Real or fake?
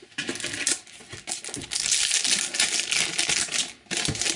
real